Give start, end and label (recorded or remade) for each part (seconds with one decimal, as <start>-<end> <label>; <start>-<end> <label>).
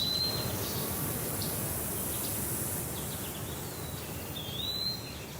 0.0-5.4 recorded